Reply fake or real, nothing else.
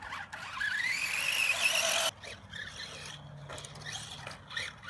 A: real